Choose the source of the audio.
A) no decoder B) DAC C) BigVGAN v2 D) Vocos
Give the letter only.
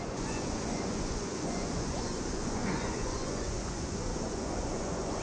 D